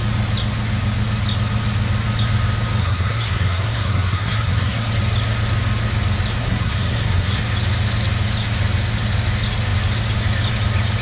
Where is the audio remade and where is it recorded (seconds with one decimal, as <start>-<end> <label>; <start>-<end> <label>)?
0.0-2.8 recorded; 2.8-4.9 remade; 4.9-6.4 recorded; 6.4-7.4 remade; 7.4-11.0 recorded